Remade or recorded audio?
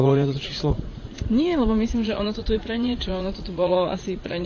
remade